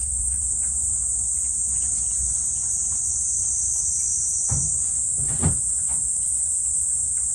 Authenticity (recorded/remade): remade